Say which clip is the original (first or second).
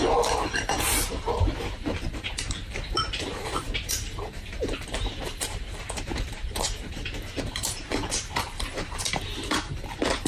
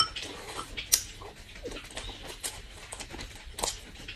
second